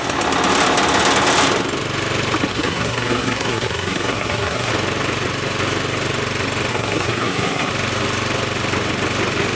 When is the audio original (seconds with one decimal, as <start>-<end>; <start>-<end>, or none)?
0.0-2.5; 4.7-6.7; 7.7-9.6